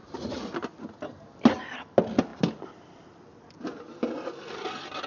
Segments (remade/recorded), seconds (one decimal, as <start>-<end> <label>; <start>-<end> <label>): 0.0-0.7 remade; 0.7-2.3 recorded; 2.3-5.1 remade